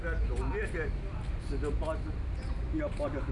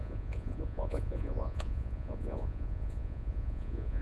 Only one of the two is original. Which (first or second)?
first